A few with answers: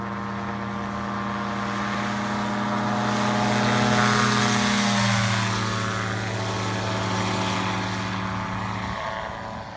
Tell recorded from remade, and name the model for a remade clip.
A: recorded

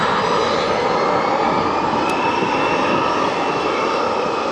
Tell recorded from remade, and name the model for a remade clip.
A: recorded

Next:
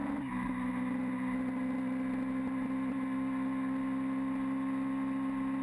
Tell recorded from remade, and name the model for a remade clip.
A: recorded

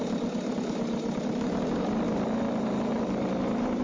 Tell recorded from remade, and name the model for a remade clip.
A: recorded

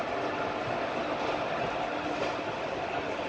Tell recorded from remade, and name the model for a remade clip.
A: recorded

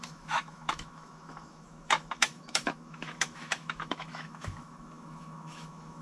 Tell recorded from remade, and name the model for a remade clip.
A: remade, autoencoder, DAC-VAE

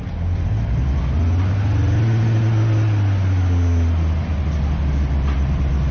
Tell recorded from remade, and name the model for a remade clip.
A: recorded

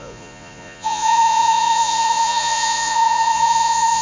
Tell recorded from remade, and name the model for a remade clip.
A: remade, vocoder, Vocos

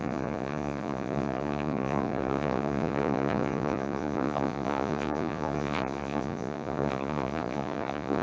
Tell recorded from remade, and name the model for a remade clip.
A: remade, vocoder, Vocos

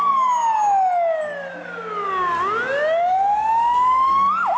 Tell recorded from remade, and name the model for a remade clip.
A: recorded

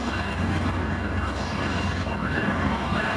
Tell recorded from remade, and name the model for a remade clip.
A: remade, codec, DAC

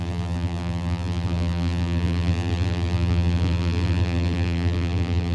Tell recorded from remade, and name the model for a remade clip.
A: remade, vocoder, BigVGAN v2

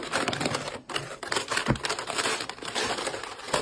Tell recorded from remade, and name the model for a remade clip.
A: recorded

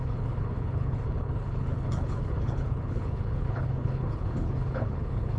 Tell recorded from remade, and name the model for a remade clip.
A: remade, codec, HILCodec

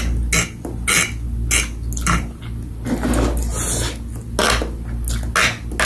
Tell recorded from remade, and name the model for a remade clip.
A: recorded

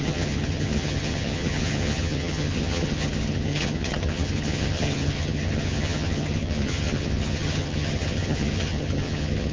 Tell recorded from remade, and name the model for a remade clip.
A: remade, vocoder, HiFi-GAN